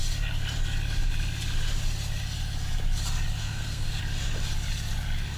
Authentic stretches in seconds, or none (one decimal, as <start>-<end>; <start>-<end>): 0.0-3.4; 4.0-5.4